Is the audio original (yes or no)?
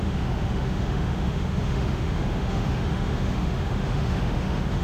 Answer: no